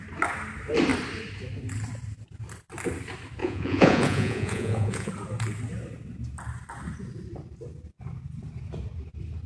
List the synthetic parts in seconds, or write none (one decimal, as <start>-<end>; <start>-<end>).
3.4-5.1

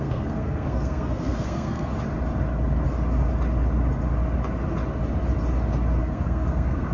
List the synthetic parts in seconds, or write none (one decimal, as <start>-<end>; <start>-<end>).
0.0-1.9; 6.0-6.9

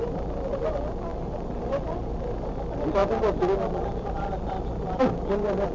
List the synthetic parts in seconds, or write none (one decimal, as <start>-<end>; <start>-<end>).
none

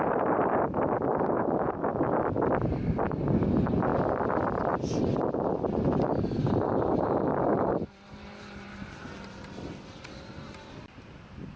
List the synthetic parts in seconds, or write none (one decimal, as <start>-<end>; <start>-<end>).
3.9-7.7

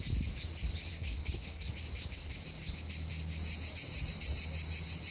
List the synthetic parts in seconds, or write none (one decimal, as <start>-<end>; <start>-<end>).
0.9-1.7

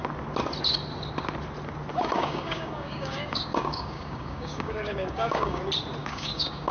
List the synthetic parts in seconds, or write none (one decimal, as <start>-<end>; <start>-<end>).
1.9-5.6; 6.0-6.7